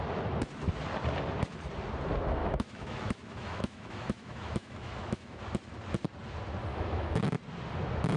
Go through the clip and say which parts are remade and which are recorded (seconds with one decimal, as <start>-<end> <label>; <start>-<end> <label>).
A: 0.0-2.4 recorded; 2.4-5.4 remade; 5.4-6.7 recorded; 6.7-7.2 remade; 7.2-8.2 recorded